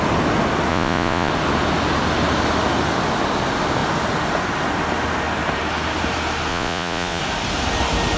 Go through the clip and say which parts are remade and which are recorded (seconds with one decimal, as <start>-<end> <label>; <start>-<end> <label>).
0.0-0.7 recorded; 0.7-1.3 remade; 1.3-6.5 recorded; 6.5-7.2 remade; 7.2-8.2 recorded